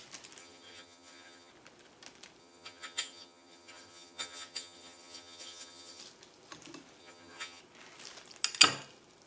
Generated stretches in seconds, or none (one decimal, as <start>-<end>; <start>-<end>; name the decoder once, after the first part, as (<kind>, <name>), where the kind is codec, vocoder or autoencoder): 0.4-1.5 (vocoder, HiFi-GAN); 2.4-6.0; 7.0-7.6